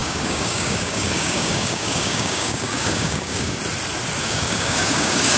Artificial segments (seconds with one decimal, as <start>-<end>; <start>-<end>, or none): 0.0-3.6; 4.2-5.4